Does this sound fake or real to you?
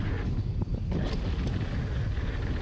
real